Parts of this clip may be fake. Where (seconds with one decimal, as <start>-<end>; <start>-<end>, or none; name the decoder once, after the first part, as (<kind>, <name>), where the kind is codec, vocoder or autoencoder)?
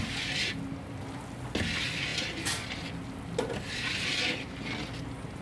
none